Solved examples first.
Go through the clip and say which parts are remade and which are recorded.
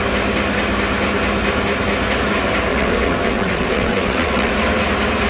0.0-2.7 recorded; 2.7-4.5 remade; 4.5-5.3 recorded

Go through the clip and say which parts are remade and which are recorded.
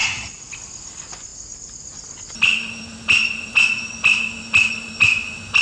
0.0-0.5 remade; 0.5-5.6 recorded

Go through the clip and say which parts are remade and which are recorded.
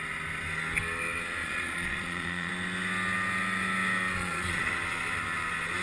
0.0-1.4 recorded; 1.4-2.5 remade; 2.5-4.2 recorded; 4.2-4.7 remade; 4.7-5.8 recorded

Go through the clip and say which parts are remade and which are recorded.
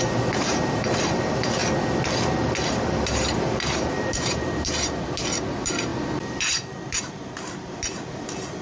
0.0-1.6 remade; 1.6-2.7 recorded; 2.7-8.6 remade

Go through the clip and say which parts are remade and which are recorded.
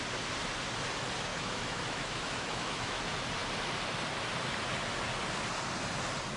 0.0-1.3 recorded; 1.3-3.0 remade; 3.0-6.4 recorded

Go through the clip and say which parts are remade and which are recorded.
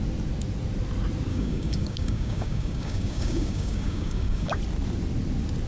0.0-1.3 recorded; 1.3-4.6 remade; 4.6-5.7 recorded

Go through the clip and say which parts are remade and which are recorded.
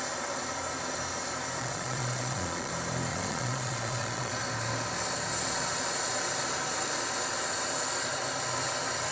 0.0-1.6 recorded; 1.6-2.7 remade; 2.7-3.1 recorded; 3.1-4.3 remade; 4.3-9.1 recorded